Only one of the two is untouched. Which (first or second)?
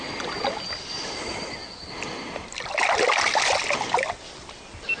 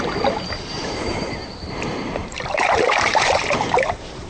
first